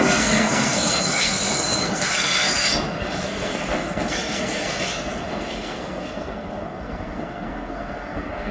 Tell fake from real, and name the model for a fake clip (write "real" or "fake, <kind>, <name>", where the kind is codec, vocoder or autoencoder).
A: fake, codec, SNAC